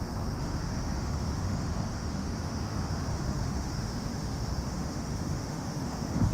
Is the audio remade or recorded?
remade